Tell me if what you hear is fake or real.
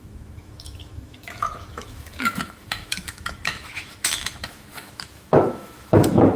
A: fake